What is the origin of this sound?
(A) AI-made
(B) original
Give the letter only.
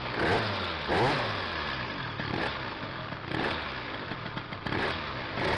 B